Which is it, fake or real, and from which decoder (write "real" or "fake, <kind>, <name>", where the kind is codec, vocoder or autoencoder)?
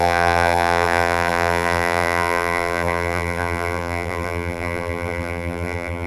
fake, vocoder, BigVGAN v2